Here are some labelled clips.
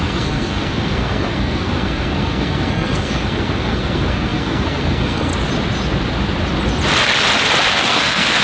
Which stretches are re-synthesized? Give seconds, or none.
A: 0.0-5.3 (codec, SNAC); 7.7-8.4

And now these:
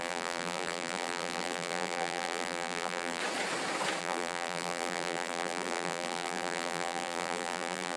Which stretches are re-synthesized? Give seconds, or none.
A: 0.0-3.2 (vocoder, BigVGAN v2); 4.0-8.0

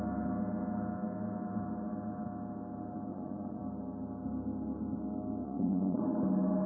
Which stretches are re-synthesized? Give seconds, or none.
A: 3.1-3.6 (vocoder, Vocos); 5.4-6.0

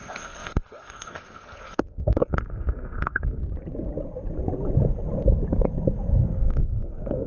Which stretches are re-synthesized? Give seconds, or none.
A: 0.0-3.4 (codec, SNAC); 6.2-7.3